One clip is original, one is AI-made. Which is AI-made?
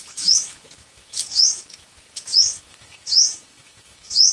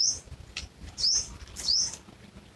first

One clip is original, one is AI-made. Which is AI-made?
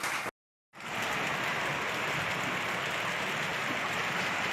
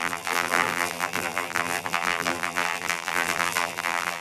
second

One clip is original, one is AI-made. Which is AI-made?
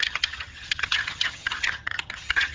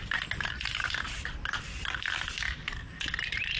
first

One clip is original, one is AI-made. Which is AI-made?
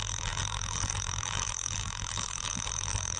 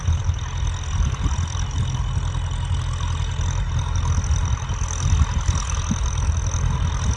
first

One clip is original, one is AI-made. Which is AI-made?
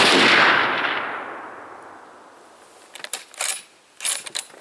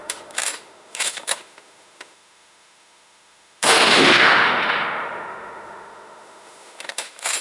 second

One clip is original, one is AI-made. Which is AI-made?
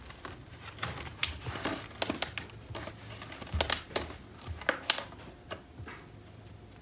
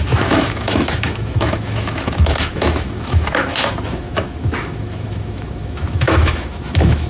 second